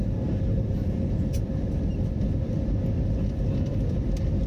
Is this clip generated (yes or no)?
no